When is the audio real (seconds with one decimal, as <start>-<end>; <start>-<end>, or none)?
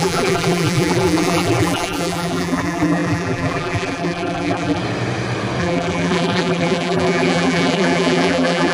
4.8-5.6